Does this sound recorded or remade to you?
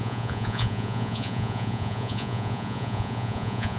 remade